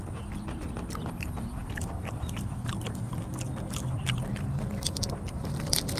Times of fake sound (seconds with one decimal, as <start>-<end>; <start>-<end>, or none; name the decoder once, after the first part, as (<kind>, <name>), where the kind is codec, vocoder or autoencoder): 1.6-2.7 (vocoder, BigVGAN v2)